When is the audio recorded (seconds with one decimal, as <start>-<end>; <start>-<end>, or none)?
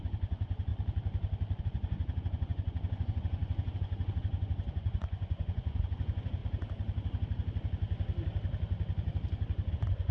0.7-1.6; 6.4-9.7